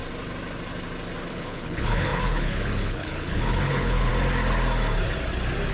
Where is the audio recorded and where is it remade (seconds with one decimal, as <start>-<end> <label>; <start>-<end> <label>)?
0.0-1.3 recorded; 1.3-4.1 remade; 4.1-5.7 recorded

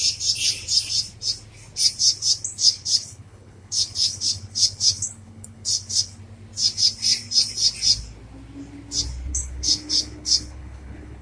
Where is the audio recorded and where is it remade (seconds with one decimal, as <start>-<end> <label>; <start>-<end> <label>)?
0.0-2.6 recorded; 2.6-6.2 remade; 6.2-9.3 recorded; 9.3-11.2 remade

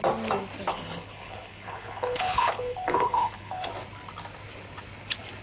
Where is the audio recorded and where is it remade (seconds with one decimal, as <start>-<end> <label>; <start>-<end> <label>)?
0.0-0.7 recorded; 0.7-3.7 remade; 3.7-5.4 recorded

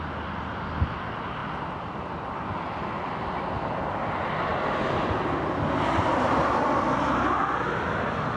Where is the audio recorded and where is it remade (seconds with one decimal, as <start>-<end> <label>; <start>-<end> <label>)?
0.0-8.4 recorded

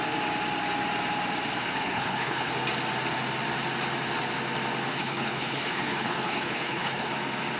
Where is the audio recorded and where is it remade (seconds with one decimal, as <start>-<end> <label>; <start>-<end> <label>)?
0.0-1.6 recorded; 1.6-2.5 remade; 2.5-4.9 recorded; 4.9-7.1 remade; 7.1-7.6 recorded

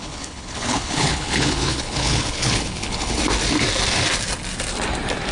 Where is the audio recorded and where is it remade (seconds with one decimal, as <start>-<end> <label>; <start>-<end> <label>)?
0.0-3.2 remade; 3.2-5.3 recorded

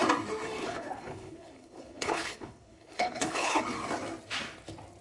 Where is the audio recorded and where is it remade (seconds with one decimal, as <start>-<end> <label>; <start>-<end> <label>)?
0.0-0.6 recorded; 0.6-3.6 remade; 3.6-5.0 recorded